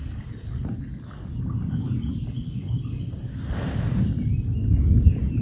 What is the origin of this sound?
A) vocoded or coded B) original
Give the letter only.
B